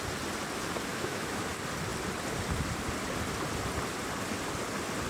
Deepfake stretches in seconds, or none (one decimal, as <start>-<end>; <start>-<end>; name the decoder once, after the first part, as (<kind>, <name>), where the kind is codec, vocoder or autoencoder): 0.9-1.5 (autoencoder, DAC-VAE)